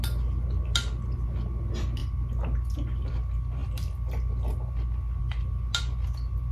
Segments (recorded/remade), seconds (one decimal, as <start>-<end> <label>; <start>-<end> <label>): 0.0-6.5 recorded